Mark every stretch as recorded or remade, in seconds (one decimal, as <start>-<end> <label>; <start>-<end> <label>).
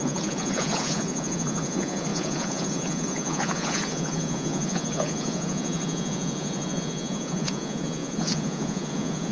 0.0-9.3 remade